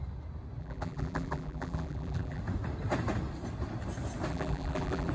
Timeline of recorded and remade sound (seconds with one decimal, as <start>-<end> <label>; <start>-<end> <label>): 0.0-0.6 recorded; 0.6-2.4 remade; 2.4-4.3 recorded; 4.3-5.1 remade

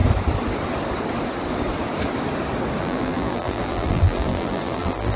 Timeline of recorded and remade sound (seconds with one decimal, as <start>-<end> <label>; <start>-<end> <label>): 0.0-2.8 recorded; 2.8-5.2 remade

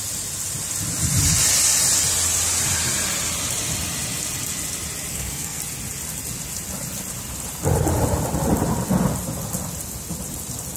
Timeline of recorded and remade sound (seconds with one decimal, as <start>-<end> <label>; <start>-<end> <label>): 0.0-5.1 recorded; 5.1-5.6 remade; 5.6-10.8 recorded

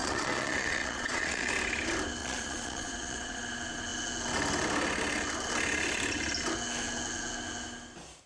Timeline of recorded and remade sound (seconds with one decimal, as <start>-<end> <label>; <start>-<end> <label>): 0.0-1.5 remade; 1.5-2.2 recorded; 2.2-3.4 remade; 3.4-8.3 recorded

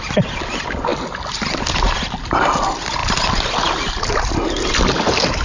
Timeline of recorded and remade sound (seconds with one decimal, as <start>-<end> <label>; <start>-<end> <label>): 0.0-5.4 recorded

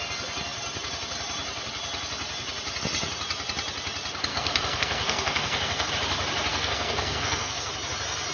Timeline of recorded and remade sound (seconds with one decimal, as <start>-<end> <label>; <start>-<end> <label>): 0.0-4.3 recorded; 4.3-5.9 remade; 5.9-6.5 recorded; 6.5-7.7 remade; 7.7-8.3 recorded

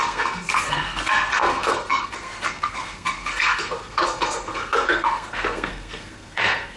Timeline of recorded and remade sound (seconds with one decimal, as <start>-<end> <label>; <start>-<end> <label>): 0.0-6.8 remade